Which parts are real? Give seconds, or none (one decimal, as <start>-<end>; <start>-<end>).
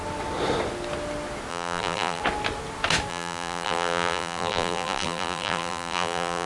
0.0-1.5; 2.2-3.1